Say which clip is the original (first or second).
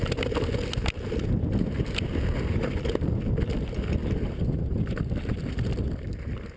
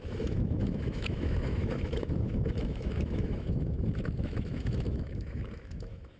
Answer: first